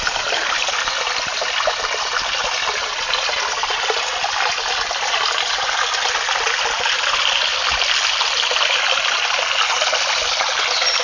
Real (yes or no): yes